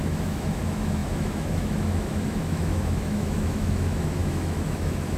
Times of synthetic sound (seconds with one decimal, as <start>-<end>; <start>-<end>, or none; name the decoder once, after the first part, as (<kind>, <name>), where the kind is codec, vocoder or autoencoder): 0.0-5.2 (autoencoder, DAC-VAE)